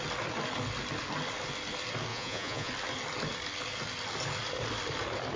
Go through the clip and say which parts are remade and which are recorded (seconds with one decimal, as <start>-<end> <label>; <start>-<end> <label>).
0.0-2.1 recorded; 2.1-2.7 remade; 2.7-5.4 recorded